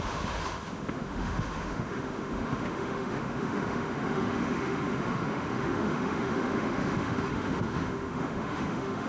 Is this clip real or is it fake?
fake